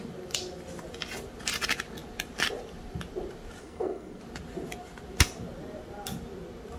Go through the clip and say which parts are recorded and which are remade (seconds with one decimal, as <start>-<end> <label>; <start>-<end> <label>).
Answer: 0.0-3.6 recorded; 3.6-4.2 remade; 4.2-6.8 recorded